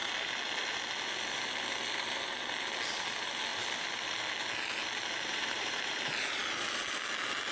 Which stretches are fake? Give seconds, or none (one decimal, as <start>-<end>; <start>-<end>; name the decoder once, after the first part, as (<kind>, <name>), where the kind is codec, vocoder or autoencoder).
5.3-6.4 (vocoder, BigVGAN v2)